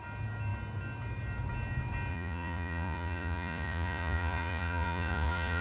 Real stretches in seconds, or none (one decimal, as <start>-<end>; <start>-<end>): 0.0-2.1